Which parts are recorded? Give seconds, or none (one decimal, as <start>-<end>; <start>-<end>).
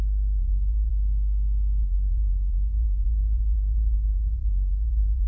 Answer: 0.0-0.4; 0.9-1.8